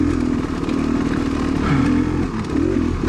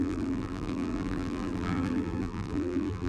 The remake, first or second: second